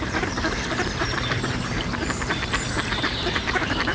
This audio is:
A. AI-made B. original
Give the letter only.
A